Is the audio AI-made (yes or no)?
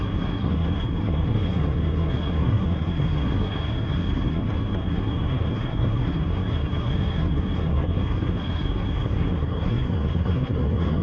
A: yes